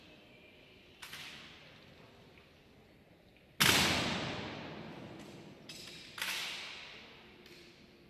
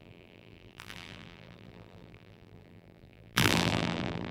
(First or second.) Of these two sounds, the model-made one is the second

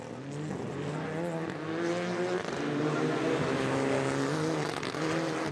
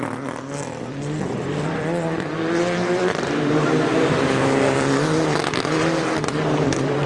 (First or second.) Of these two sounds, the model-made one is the second